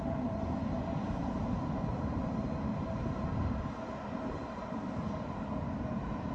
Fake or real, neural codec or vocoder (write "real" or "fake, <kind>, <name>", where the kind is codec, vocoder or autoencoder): fake, vocoder, BigVGAN v2